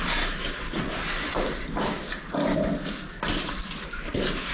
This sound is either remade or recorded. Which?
recorded